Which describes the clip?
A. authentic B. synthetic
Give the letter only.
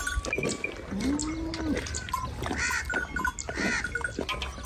A